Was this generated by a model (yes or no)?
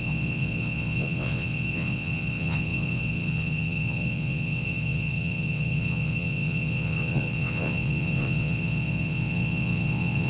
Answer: yes